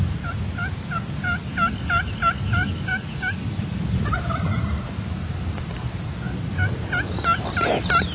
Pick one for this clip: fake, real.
real